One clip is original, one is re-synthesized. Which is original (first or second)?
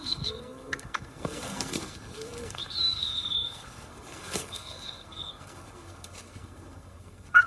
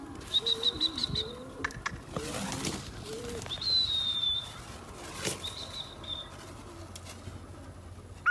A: second